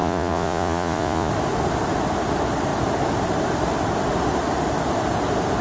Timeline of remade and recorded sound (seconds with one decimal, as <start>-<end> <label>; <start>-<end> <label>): 0.0-1.3 remade; 1.3-5.6 recorded